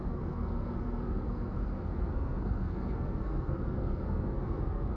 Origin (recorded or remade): remade